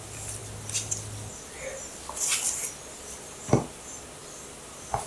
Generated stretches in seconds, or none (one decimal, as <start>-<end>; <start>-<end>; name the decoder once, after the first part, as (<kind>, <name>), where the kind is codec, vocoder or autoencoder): none